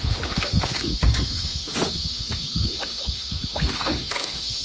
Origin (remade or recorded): remade